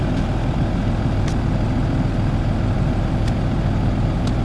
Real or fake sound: real